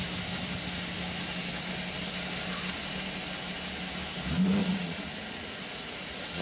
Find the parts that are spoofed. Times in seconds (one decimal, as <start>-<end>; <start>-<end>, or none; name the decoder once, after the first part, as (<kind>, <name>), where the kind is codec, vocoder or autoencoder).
4.6-6.4 (vocoder, Vocos)